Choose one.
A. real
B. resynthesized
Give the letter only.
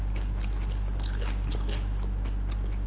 A